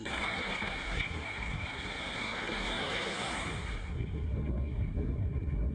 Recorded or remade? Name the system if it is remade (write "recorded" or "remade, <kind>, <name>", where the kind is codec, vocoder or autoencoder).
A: remade, codec, SNAC